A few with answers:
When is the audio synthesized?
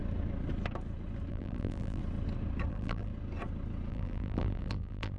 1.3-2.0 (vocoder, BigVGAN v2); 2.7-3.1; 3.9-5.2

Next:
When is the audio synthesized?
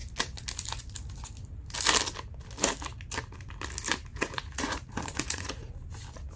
4.1-5.7 (vocoder, Vocos)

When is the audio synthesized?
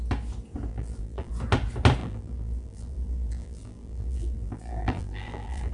0.7-1.3 (vocoder, BigVGAN v2); 2.0-5.7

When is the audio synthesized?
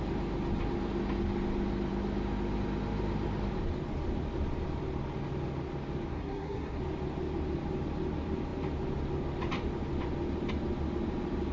6.1-6.8 (codec, SNAC)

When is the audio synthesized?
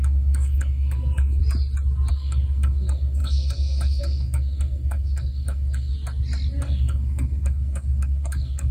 0.0-1.4 (codec, SNAC); 2.1-5.9; 6.6-8.7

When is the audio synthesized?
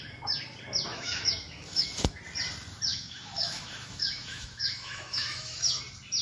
0.9-2.2 (autoencoder, DAC-VAE); 2.9-5.8